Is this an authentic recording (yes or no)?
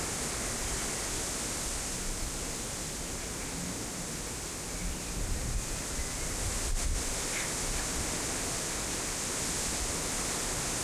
yes